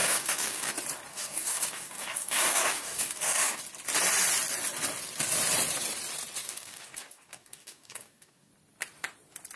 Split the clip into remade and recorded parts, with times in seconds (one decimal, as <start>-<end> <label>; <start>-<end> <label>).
0.0-0.7 remade; 0.7-1.1 recorded; 1.1-3.6 remade; 3.6-6.4 recorded; 6.4-8.5 remade; 8.5-9.6 recorded